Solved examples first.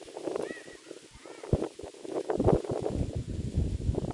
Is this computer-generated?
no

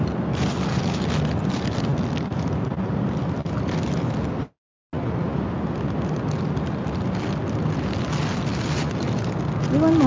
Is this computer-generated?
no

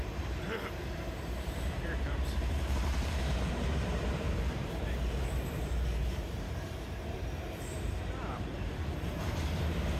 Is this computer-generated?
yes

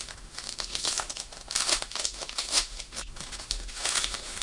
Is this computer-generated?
yes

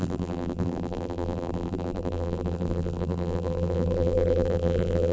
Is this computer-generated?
yes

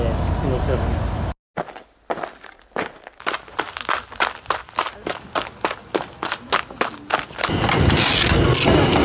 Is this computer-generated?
no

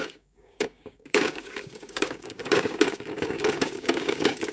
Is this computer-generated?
yes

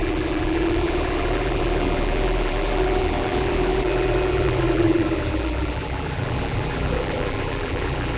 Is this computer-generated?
yes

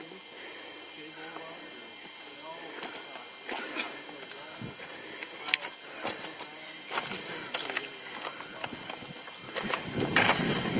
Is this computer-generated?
no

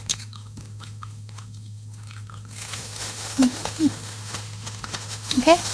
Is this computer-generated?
yes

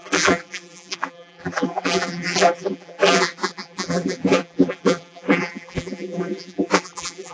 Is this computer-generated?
yes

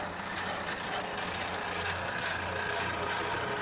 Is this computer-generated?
no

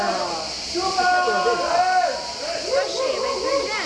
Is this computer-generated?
no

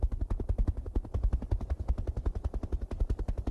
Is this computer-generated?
no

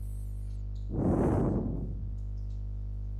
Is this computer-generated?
no